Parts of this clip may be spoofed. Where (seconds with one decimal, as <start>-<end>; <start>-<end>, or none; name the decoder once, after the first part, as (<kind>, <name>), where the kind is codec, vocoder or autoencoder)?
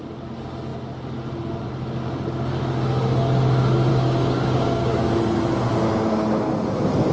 3.9-5.1 (codec, DAC)